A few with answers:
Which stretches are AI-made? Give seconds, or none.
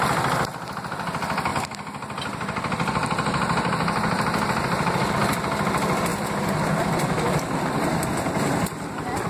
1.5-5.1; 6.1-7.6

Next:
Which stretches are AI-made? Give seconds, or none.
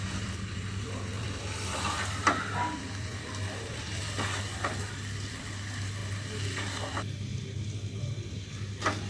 0.0-6.0; 6.6-9.1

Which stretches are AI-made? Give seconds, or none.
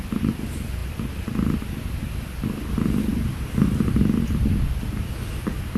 none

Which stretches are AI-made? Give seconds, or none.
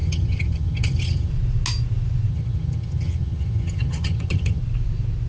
0.0-1.3; 2.3-4.6